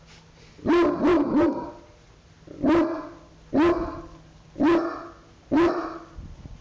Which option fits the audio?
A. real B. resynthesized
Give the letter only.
A